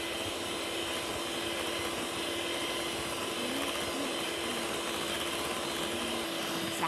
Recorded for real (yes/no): yes